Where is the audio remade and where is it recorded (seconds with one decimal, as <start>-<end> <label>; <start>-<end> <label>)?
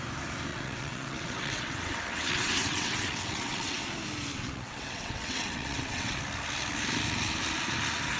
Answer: 0.0-0.5 recorded; 0.5-3.8 remade; 3.8-4.3 recorded; 4.3-6.2 remade; 6.2-8.2 recorded